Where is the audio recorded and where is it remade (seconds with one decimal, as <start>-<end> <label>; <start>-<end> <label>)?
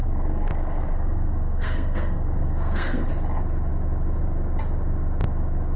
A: 0.0-3.1 remade; 3.1-5.8 recorded